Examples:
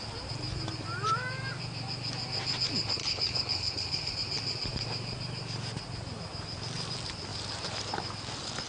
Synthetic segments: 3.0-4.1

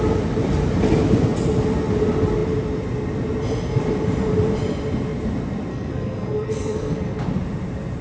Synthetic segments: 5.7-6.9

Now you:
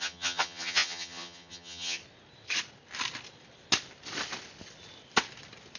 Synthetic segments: 0.0-2.0

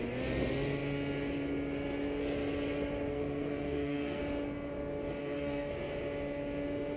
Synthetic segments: 3.1-4.2; 5.2-5.7

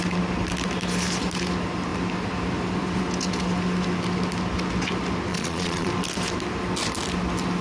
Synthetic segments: 5.3-5.9

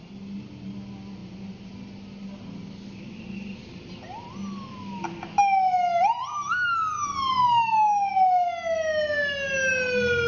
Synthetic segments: none